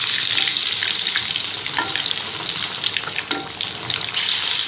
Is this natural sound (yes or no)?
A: yes